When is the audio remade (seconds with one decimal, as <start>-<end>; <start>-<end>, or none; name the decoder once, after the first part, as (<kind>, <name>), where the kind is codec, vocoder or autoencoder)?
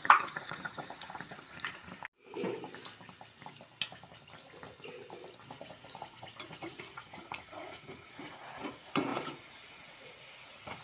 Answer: 0.0-1.8 (vocoder, Vocos); 5.6-10.8